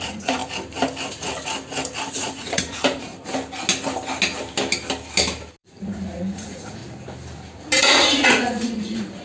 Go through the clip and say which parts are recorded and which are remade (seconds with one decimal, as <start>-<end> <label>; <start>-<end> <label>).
0.0-0.4 remade; 0.4-2.1 recorded; 2.1-3.1 remade; 3.1-5.6 recorded; 5.6-6.8 remade; 6.8-7.8 recorded; 7.8-9.2 remade